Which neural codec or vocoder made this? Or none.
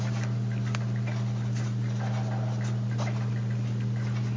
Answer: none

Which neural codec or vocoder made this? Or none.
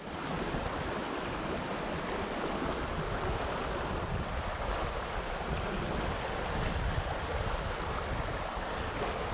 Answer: none